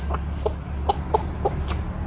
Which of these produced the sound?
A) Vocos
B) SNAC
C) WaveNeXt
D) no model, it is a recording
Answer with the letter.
D